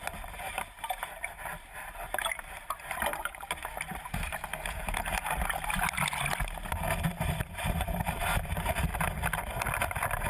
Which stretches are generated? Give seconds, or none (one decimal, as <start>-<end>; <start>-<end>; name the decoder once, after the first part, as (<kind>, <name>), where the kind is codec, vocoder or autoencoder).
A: 0.0-4.5 (vocoder, BigVGAN v2); 7.1-8.9